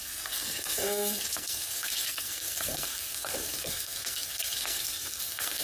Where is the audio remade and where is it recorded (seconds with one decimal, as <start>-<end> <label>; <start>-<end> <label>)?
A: 0.0-5.6 remade

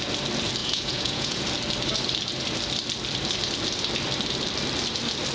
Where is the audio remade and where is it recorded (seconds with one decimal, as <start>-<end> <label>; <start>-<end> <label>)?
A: 0.0-0.6 recorded; 0.6-1.4 remade; 1.4-5.3 recorded

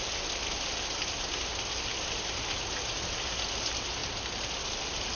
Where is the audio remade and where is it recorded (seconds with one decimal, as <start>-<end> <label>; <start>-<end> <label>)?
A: 0.0-5.2 recorded

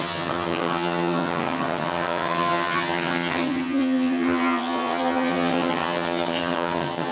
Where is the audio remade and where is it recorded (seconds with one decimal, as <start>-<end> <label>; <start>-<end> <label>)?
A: 0.0-7.1 remade

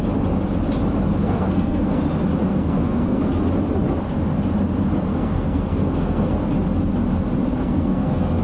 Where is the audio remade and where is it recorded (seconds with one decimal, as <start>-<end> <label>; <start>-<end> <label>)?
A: 0.0-1.2 recorded; 1.2-2.0 remade; 2.0-2.5 recorded; 2.5-3.3 remade; 3.3-5.1 recorded; 5.1-6.4 remade; 6.4-7.5 recorded; 7.5-8.4 remade

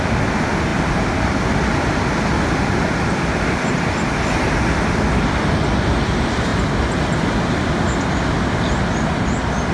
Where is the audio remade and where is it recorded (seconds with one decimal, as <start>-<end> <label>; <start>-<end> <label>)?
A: 0.0-9.7 recorded

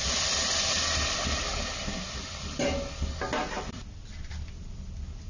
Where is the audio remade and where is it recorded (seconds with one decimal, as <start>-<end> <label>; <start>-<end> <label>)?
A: 0.0-5.3 recorded